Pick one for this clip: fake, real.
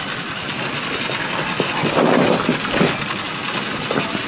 real